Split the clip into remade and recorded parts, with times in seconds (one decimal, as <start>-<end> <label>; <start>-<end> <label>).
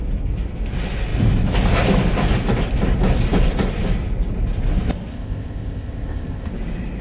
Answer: 0.0-5.1 recorded; 5.1-6.5 remade; 6.5-7.0 recorded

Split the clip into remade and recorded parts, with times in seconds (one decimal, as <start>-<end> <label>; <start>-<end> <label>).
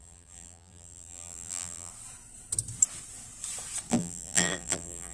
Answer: 0.0-1.9 remade; 1.9-3.9 recorded; 3.9-5.1 remade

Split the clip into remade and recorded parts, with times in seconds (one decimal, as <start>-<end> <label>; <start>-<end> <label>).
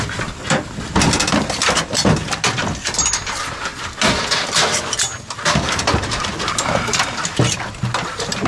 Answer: 0.0-8.5 recorded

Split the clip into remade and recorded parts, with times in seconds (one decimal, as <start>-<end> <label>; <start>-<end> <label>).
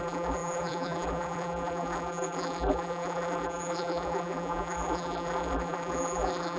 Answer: 0.0-6.6 remade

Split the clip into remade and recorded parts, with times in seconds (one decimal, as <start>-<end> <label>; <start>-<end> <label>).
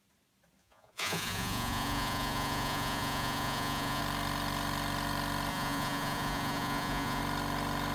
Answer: 0.0-0.6 recorded; 0.6-4.0 remade; 4.0-5.5 recorded; 5.5-7.2 remade; 7.2-7.9 recorded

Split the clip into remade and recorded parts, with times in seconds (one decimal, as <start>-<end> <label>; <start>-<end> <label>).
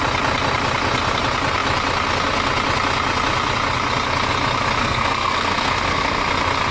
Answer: 0.0-4.8 recorded; 4.8-6.2 remade; 6.2-6.7 recorded